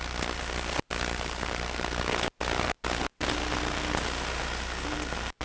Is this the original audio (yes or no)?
yes